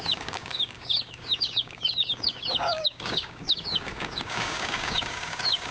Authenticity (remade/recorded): remade